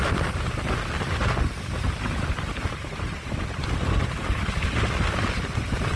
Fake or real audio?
real